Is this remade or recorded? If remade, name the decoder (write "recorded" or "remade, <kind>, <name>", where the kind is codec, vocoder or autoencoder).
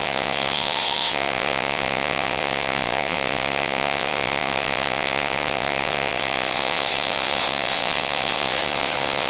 remade, vocoder, WaveNeXt